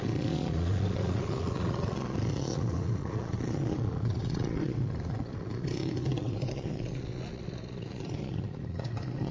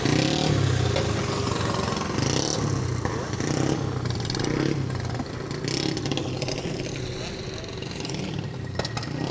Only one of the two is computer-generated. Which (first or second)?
first